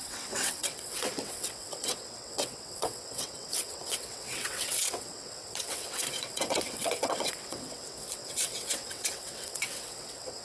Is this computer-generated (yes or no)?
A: yes